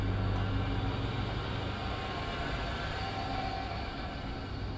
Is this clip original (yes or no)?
yes